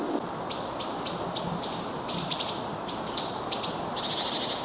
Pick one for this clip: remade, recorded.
recorded